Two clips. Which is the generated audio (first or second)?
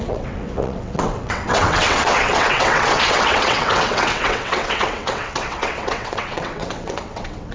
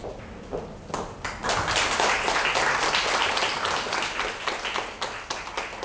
first